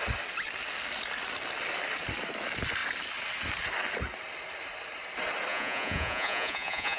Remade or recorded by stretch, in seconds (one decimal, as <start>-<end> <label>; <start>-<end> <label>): 0.0-5.5 recorded; 5.5-7.0 remade